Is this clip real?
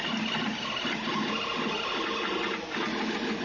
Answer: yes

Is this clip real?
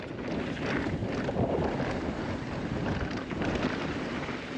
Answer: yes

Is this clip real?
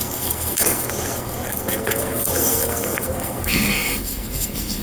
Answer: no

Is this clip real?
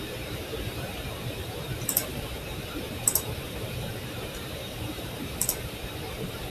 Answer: no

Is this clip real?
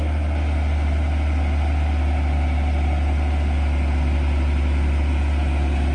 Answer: yes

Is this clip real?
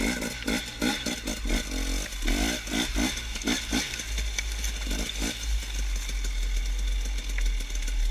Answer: yes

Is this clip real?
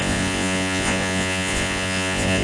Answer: no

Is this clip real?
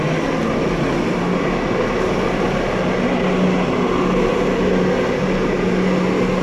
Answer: yes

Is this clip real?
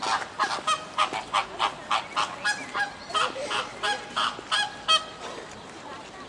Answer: yes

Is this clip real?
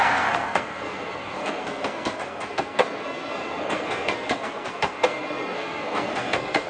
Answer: no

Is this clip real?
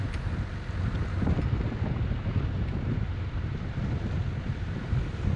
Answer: yes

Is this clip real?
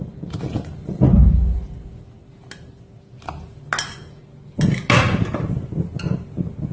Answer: yes